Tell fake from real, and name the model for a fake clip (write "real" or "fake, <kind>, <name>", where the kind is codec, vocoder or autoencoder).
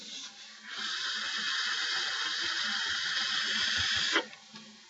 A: real